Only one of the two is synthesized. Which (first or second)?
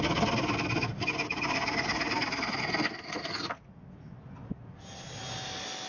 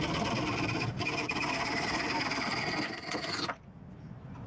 second